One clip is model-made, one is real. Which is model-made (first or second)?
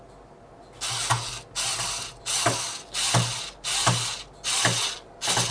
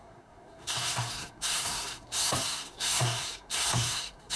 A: second